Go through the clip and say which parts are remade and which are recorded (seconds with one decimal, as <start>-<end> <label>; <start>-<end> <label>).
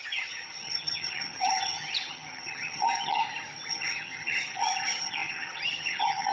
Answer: 0.0-3.2 remade; 3.2-3.7 recorded; 3.7-6.3 remade